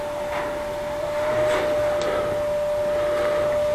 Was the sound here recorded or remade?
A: recorded